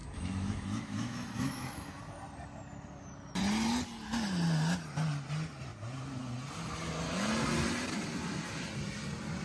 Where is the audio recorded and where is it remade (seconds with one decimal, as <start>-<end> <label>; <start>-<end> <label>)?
0.0-2.0 remade; 2.0-9.4 recorded